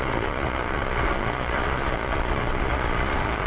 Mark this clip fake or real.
fake